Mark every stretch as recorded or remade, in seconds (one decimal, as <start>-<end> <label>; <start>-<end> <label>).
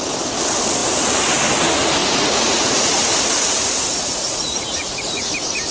0.0-2.0 recorded; 2.0-5.3 remade; 5.3-5.7 recorded